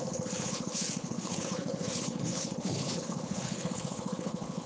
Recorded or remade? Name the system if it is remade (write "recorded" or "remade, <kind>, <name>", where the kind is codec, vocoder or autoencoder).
remade, codec, HILCodec